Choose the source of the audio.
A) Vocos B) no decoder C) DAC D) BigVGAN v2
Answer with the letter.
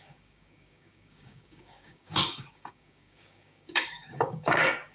C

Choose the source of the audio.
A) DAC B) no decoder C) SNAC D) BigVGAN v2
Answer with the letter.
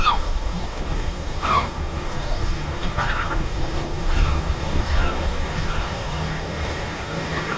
A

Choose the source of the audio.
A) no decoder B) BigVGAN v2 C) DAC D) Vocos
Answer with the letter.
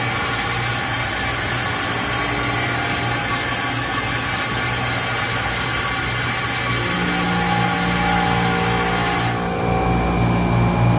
A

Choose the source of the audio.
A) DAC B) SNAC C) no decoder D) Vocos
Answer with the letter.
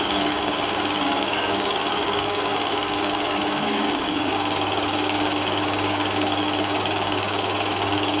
A